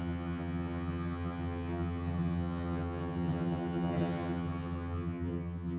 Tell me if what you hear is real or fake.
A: fake